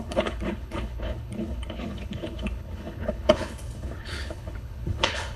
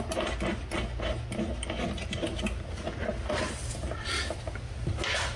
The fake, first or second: first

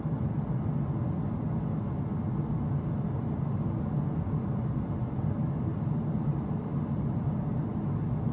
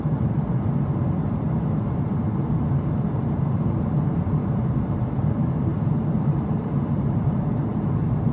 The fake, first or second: second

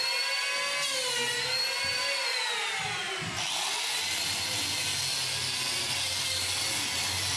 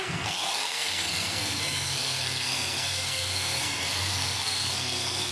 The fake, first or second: second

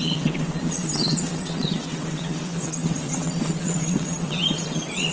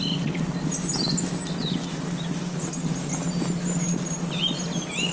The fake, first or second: first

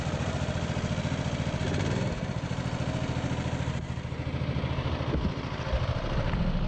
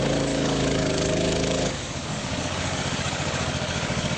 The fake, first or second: second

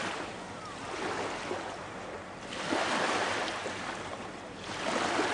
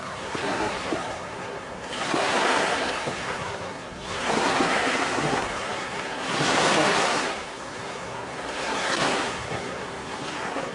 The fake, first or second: second